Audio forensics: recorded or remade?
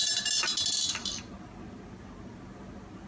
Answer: recorded